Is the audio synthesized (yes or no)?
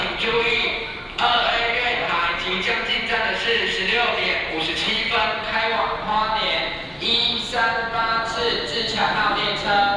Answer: no